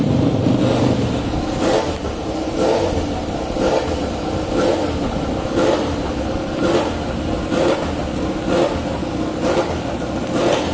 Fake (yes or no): no